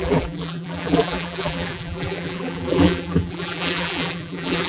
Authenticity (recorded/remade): remade